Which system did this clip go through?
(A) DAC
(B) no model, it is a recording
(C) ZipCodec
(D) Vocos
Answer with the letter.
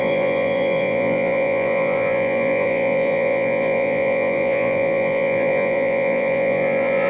D